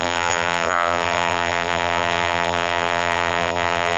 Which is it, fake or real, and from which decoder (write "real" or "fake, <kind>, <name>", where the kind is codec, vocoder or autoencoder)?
fake, vocoder, BigVGAN v2